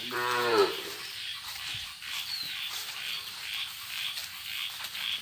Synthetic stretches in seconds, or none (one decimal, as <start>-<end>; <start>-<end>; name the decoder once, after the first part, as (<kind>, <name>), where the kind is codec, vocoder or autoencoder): 0.0-5.2 (vocoder, BigVGAN v2)